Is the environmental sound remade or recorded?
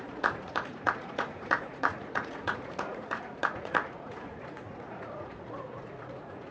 remade